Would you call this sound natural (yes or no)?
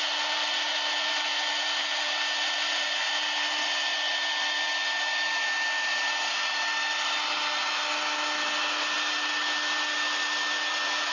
yes